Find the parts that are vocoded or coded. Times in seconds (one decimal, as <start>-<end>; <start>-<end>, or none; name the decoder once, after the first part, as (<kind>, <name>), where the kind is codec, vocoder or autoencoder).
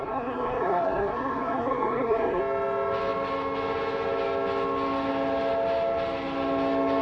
0.0-2.4 (codec, SNAC)